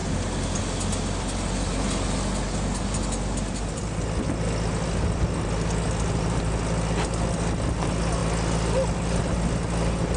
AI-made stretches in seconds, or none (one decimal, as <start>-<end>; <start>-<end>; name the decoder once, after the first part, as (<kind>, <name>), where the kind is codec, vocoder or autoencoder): none